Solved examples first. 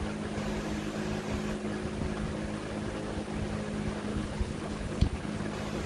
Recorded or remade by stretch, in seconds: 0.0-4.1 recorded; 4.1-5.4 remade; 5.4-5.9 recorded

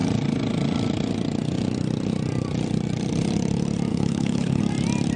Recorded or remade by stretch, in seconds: 0.0-3.9 recorded; 3.9-4.6 remade; 4.6-5.2 recorded

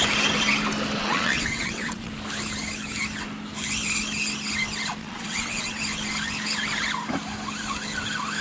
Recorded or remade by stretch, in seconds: 0.0-1.0 recorded; 1.0-2.1 remade; 2.1-5.0 recorded; 5.0-5.8 remade; 5.8-8.4 recorded

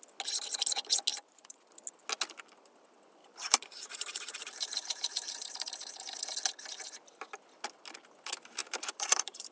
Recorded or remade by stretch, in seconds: 0.0-1.1 recorded; 1.1-1.7 remade; 1.7-3.2 recorded; 3.2-6.2 remade; 6.2-8.6 recorded; 8.6-9.5 remade

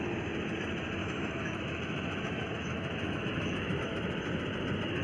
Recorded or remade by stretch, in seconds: 0.0-1.0 recorded; 1.0-3.8 remade; 3.8-5.0 recorded

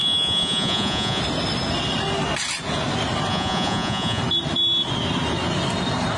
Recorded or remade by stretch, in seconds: 0.0-1.2 remade; 1.2-3.3 recorded; 3.3-4.2 remade; 4.2-6.2 recorded

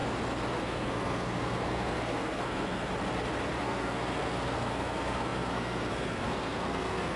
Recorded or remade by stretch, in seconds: 0.0-0.6 recorded; 0.6-2.9 remade; 2.9-3.6 recorded; 3.6-7.2 remade